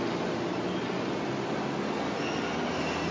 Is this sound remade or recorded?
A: recorded